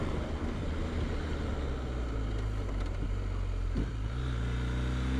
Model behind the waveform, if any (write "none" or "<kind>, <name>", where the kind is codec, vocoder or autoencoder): none